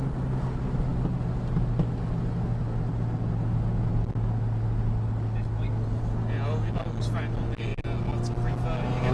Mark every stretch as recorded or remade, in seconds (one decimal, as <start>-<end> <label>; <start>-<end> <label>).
0.0-9.1 recorded

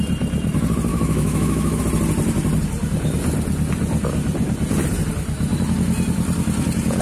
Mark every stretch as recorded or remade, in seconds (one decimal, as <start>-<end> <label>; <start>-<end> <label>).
0.0-0.9 recorded; 0.9-1.8 remade; 1.8-7.0 recorded

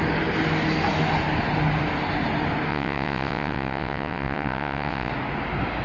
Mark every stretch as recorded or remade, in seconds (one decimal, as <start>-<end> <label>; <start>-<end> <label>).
0.0-2.7 recorded; 2.7-5.1 remade; 5.1-5.8 recorded